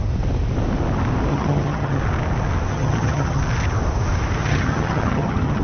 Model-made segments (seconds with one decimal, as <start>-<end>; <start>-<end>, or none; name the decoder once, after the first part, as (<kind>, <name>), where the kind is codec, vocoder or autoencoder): 1.3-2.0 (vocoder, HiFi-GAN); 2.7-3.4; 4.4-5.6